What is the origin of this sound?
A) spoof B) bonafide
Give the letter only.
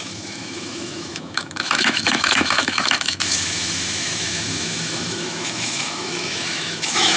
A